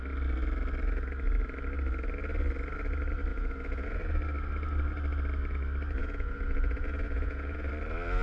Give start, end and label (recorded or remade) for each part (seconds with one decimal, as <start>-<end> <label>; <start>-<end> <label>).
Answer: 0.0-3.3 recorded; 3.3-4.0 remade; 4.0-6.0 recorded; 6.0-7.7 remade; 7.7-8.2 recorded